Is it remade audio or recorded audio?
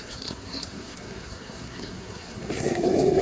remade